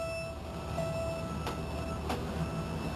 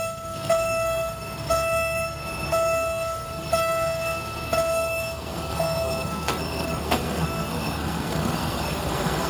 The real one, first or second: first